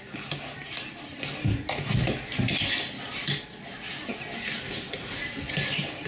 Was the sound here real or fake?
real